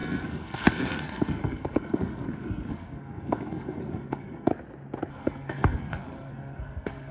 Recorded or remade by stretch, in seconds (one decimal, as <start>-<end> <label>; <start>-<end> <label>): 0.0-4.5 remade; 4.5-5.1 recorded; 5.1-7.1 remade